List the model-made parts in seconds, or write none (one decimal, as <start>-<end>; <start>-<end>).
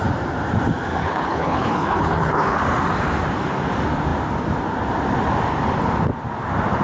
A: 1.0-2.6